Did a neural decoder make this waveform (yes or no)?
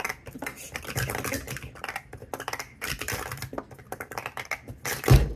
no